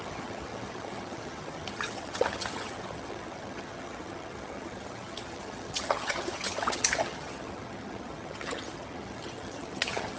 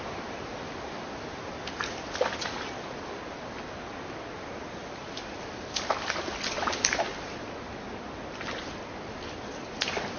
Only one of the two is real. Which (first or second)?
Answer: second